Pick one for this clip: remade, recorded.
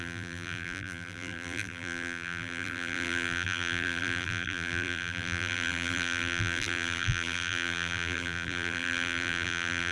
remade